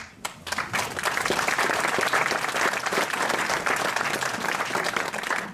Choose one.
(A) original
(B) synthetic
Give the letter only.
A